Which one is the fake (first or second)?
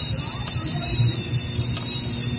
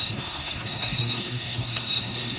second